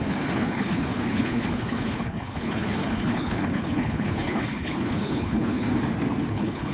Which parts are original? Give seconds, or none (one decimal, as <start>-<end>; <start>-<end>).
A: 5.7-6.3